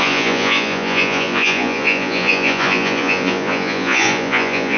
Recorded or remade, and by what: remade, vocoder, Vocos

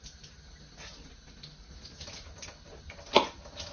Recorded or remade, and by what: recorded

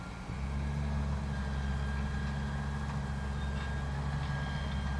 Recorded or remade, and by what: recorded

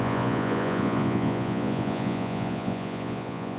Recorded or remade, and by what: remade, vocoder, Vocos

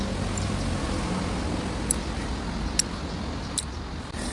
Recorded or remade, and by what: recorded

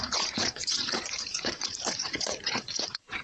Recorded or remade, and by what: remade, vocoder, Vocos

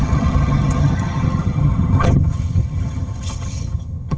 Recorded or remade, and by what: remade, vocoder, HiFi-GAN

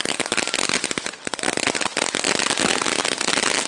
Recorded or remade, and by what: recorded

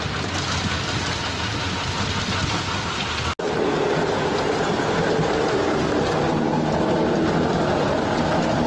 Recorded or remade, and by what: recorded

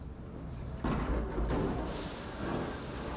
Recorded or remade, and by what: recorded